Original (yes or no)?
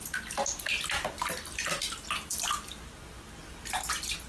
yes